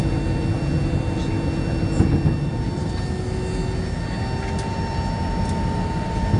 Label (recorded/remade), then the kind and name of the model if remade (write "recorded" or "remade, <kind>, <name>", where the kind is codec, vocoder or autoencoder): recorded